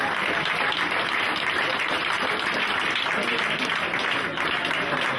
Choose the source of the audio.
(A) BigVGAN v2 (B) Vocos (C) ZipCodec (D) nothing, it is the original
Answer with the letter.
D